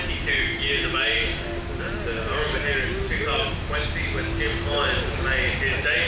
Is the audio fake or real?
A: real